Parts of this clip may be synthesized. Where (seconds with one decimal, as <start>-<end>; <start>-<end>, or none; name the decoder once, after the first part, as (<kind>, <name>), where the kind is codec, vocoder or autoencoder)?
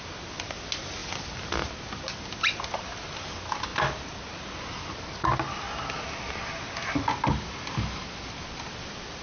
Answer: none